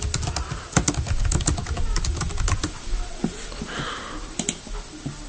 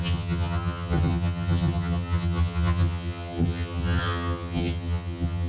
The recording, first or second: first